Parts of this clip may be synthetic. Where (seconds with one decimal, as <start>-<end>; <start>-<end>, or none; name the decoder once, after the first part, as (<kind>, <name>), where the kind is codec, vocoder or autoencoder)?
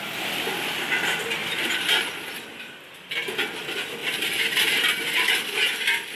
1.4-2.2 (vocoder, BigVGAN v2); 4.0-5.3